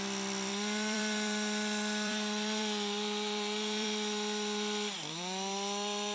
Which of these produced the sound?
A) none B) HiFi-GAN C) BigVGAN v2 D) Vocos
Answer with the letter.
C